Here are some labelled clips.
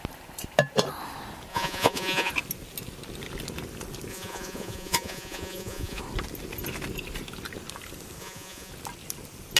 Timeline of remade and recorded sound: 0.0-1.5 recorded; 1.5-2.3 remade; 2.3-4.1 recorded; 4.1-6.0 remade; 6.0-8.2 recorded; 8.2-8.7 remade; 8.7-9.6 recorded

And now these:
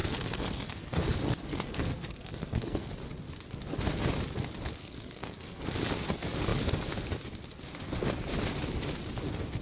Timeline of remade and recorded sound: 0.0-2.9 remade; 2.9-4.8 recorded; 4.8-5.6 remade; 5.6-9.6 recorded